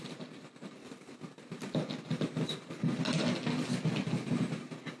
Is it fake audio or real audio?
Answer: real